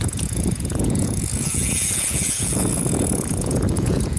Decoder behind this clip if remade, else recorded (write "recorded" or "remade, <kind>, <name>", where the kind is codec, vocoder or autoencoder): remade, vocoder, Vocos